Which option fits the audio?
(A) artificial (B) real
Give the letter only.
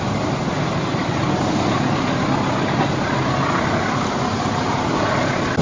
B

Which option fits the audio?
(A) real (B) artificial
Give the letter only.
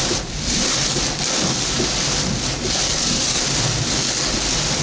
A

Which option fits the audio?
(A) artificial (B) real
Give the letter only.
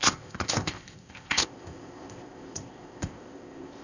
A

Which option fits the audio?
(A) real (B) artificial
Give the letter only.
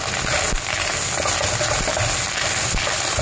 A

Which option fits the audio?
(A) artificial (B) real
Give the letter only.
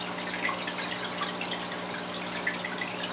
B